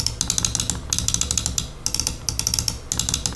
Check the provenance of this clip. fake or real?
real